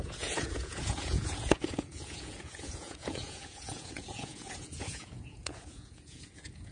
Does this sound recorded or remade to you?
remade